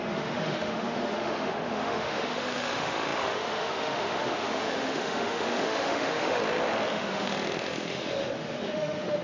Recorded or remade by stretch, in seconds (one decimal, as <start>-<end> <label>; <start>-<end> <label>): 0.0-6.4 remade; 6.4-6.9 recorded; 6.9-9.2 remade

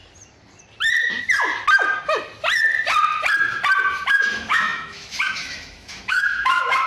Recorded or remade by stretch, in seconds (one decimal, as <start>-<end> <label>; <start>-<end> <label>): 0.0-4.1 recorded; 4.1-6.9 remade

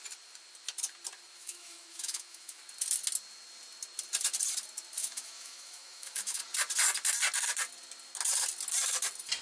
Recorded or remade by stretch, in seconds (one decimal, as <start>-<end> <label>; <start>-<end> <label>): 0.0-1.4 recorded; 1.4-2.6 remade; 2.6-5.0 recorded; 5.0-6.4 remade; 6.4-9.4 recorded

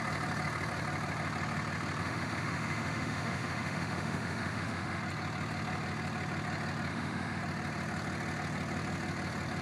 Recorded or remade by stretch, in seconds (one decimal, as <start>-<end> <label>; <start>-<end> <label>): 0.0-2.0 recorded; 2.0-5.0 remade; 5.0-6.9 recorded; 6.9-7.4 remade; 7.4-9.6 recorded

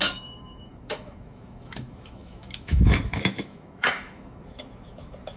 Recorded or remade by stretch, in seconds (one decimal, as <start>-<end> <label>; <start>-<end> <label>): 0.0-5.4 remade

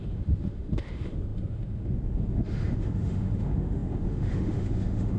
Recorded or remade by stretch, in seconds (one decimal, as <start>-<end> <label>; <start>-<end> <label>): 0.0-5.2 remade

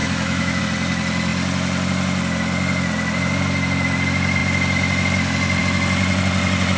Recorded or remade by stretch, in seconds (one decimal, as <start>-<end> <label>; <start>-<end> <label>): 0.0-0.6 remade; 0.6-6.8 recorded